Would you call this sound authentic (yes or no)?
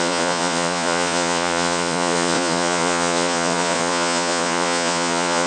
no